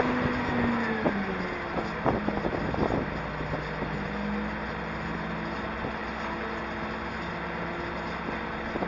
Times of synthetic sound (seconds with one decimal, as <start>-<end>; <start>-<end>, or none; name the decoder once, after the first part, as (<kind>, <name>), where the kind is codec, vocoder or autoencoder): none